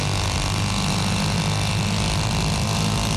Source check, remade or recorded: recorded